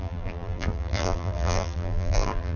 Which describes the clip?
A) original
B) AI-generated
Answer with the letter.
B